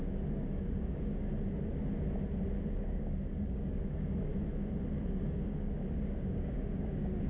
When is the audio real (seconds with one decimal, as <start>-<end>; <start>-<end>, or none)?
1.3-2.8; 4.3-5.0